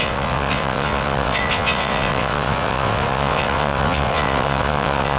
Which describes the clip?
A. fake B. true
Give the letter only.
A